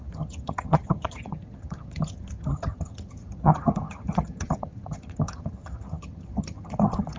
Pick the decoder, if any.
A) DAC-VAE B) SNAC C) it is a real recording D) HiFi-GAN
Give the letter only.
D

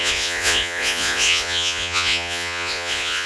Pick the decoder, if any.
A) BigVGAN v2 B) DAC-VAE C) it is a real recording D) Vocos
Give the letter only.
D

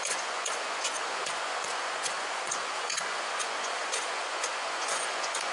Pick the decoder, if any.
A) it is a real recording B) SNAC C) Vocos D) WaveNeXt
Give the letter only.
C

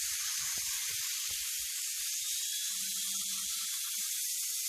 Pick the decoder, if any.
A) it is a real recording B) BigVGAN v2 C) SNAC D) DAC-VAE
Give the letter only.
A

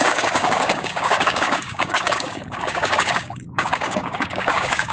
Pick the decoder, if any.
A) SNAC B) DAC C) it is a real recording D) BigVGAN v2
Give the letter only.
B